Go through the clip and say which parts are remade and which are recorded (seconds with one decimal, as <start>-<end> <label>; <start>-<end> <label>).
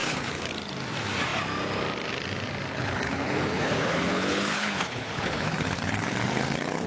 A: 0.0-0.5 remade; 0.5-2.7 recorded; 2.7-6.9 remade